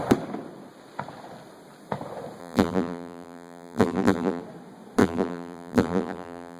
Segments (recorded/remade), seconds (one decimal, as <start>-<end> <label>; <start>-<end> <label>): 0.0-2.4 recorded; 2.4-4.4 remade; 4.4-5.0 recorded; 5.0-6.6 remade